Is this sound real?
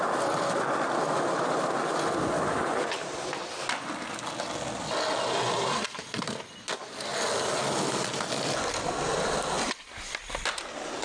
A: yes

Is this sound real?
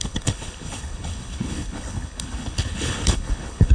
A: no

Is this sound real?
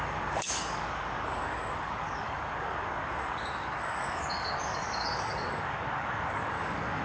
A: no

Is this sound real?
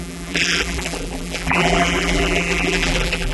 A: no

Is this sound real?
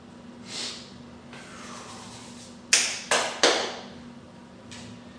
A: yes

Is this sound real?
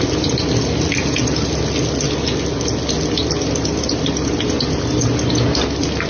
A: yes